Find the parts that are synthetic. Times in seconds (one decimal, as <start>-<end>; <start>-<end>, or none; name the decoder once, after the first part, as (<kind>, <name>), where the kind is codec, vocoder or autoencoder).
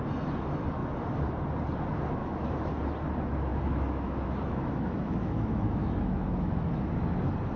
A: 2.2-2.7 (autoencoder, DAC-VAE); 3.5-6.9